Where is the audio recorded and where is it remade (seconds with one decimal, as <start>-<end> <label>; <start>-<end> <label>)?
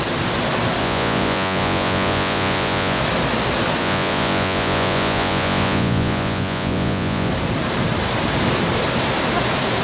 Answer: 0.0-0.8 recorded; 0.8-3.0 remade; 3.0-3.8 recorded; 3.8-7.3 remade; 7.3-9.8 recorded